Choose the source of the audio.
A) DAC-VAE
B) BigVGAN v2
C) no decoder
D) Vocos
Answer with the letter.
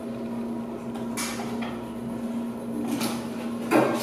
C